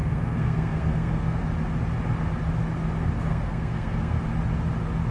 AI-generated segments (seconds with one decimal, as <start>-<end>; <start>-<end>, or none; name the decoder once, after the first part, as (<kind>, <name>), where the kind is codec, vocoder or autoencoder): 0.0-1.4 (codec, SNAC); 3.3-4.2